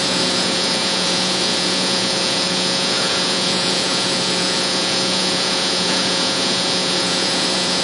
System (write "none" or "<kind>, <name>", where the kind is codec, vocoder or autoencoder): vocoder, Vocos